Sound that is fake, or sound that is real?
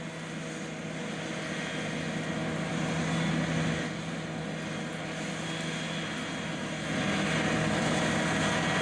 real